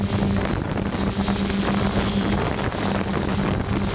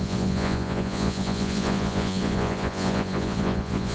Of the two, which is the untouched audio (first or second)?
first